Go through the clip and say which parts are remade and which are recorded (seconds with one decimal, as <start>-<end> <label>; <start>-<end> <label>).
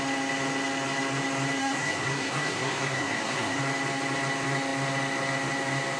0.0-1.6 recorded; 1.6-3.6 remade; 3.6-6.0 recorded